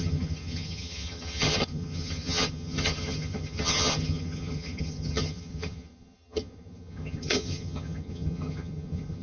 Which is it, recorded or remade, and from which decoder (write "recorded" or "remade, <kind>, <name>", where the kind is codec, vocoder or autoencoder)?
remade, vocoder, HiFi-GAN